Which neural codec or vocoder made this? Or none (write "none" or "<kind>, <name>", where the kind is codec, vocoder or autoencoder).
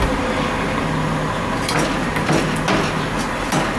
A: none